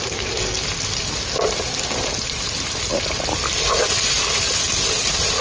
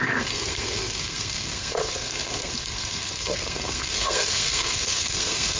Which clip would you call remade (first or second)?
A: second